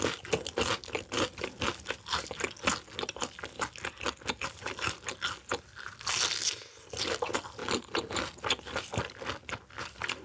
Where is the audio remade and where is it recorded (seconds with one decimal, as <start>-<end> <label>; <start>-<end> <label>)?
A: 0.0-10.2 recorded